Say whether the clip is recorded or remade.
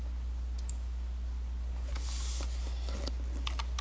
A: recorded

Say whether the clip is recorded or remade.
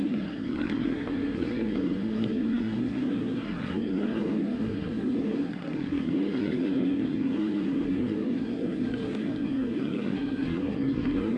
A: remade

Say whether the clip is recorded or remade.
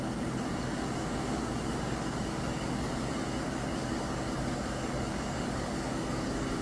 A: remade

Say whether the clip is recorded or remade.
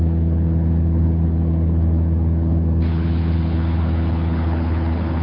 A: remade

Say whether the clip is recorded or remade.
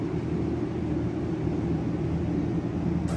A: recorded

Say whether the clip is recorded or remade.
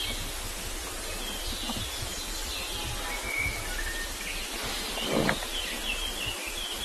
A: recorded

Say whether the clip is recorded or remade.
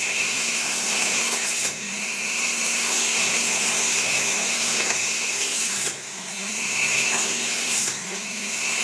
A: remade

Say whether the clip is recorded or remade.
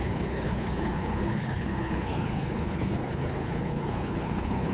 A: remade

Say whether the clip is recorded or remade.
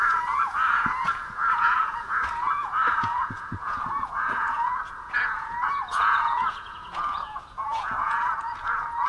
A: remade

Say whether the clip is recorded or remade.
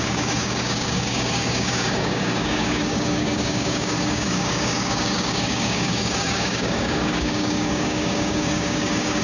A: remade